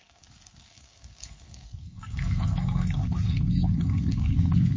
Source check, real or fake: fake